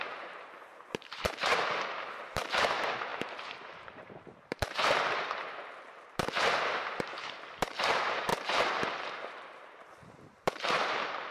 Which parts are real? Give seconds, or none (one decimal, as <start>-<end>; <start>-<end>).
none